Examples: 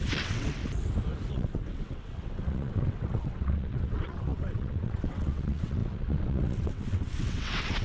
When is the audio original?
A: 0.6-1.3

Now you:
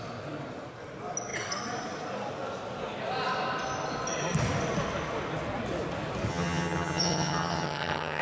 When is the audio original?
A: 0.0-6.3